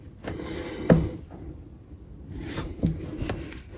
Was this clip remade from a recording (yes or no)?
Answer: no